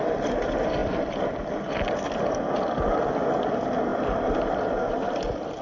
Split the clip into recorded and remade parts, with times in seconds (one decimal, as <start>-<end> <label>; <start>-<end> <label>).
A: 0.0-0.8 recorded; 0.8-1.6 remade; 1.6-3.9 recorded; 3.9-4.7 remade; 4.7-5.6 recorded